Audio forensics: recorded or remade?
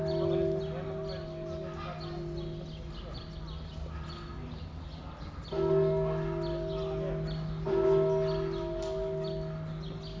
recorded